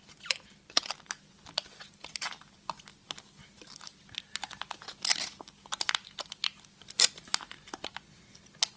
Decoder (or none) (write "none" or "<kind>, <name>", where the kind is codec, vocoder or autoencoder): none